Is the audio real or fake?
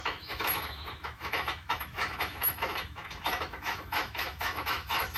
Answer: fake